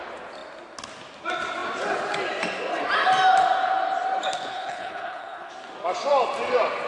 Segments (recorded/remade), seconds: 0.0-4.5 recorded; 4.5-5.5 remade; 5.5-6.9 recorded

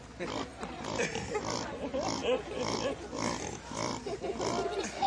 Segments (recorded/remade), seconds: 0.0-5.1 recorded

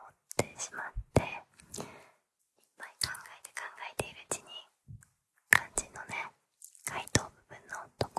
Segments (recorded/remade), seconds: 0.0-8.2 recorded

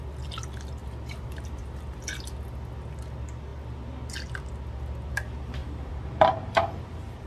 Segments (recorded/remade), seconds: 0.0-0.8 recorded; 0.8-2.0 remade; 2.0-5.6 recorded; 5.6-7.3 remade

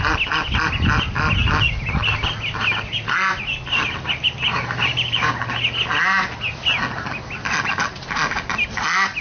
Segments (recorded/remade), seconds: 0.0-4.5 recorded; 4.5-5.3 remade; 5.3-9.2 recorded

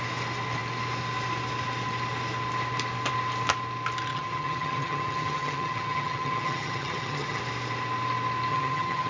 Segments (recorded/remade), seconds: 0.0-4.1 recorded; 4.1-7.4 remade; 7.4-8.5 recorded; 8.5-9.1 remade

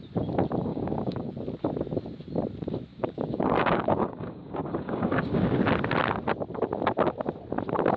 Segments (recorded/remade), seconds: 0.0-0.7 recorded; 0.7-1.3 remade; 1.3-2.9 recorded; 2.9-5.6 remade; 5.6-8.0 recorded

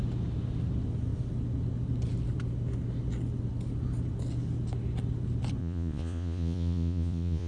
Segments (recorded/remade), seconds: 0.0-5.6 recorded; 5.6-7.5 remade